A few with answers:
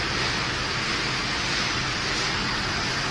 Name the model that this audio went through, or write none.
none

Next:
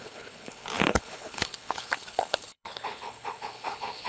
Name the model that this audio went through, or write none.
codec, HILCodec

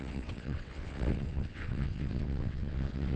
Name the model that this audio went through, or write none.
vocoder, WaveNeXt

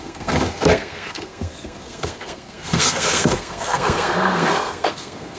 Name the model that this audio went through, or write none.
codec, SNAC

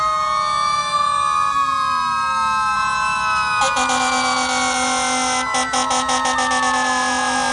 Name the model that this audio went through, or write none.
none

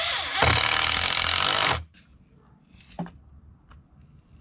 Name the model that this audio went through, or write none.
none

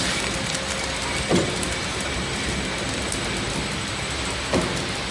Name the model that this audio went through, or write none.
none